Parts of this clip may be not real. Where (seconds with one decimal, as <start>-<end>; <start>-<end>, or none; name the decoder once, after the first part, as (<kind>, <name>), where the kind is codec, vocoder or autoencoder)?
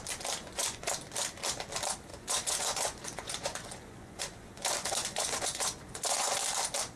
0.4-0.9 (vocoder, Vocos); 2.1-6.3